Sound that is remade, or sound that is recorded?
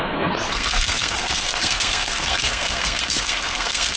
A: remade